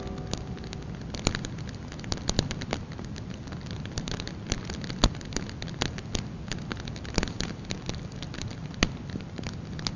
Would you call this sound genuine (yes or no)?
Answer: yes